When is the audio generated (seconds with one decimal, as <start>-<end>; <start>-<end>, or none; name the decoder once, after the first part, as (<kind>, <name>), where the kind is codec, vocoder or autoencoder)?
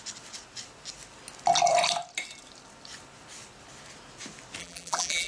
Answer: 4.6-5.3 (vocoder, BigVGAN v2)